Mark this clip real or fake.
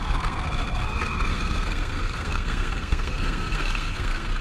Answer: fake